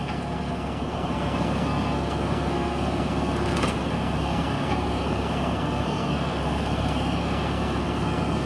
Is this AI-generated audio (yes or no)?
yes